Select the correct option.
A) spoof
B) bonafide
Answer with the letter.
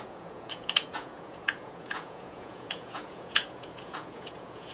A